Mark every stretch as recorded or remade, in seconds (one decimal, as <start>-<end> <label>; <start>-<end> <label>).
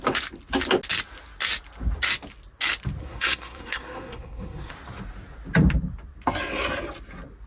0.0-3.0 recorded; 3.0-4.7 remade; 4.7-7.5 recorded